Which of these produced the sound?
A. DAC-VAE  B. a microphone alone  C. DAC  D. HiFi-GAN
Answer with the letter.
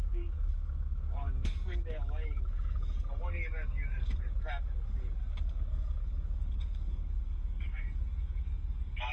C